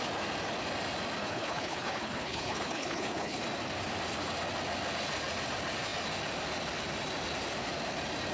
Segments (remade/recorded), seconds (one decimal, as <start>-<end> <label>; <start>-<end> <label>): 0.0-1.2 recorded; 1.2-3.4 remade; 3.4-8.3 recorded

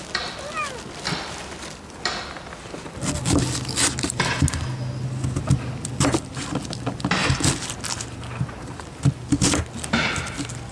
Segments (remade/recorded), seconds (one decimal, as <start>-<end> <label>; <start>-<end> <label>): 0.0-10.7 recorded

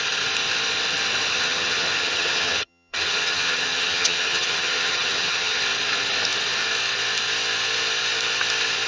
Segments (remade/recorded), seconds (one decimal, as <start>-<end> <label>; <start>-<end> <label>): 0.0-1.3 recorded; 1.3-5.6 remade; 5.6-8.9 recorded

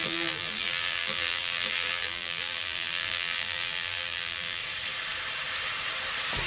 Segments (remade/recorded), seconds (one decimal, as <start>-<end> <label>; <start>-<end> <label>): 0.0-4.6 remade; 4.6-6.5 recorded

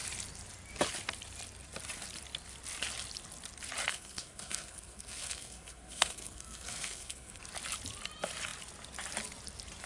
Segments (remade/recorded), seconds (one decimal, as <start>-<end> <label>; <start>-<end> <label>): 0.0-3.9 recorded; 3.9-7.4 remade; 7.4-9.9 recorded

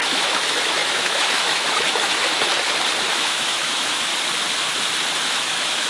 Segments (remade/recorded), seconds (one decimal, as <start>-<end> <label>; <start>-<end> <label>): 0.0-2.5 remade; 2.5-3.1 recorded; 3.1-4.1 remade; 4.1-5.2 recorded; 5.2-5.9 remade

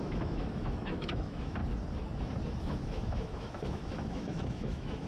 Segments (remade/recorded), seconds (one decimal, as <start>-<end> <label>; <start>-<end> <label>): 0.0-1.6 remade; 1.6-2.6 recorded; 2.6-5.1 remade